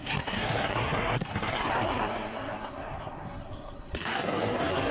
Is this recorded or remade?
remade